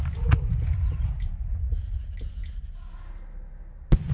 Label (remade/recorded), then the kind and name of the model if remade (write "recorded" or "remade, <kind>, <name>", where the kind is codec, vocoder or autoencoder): recorded